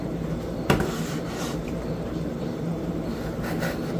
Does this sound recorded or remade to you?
remade